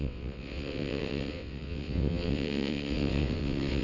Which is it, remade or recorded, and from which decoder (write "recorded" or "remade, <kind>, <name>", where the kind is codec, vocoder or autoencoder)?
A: remade, vocoder, WaveNeXt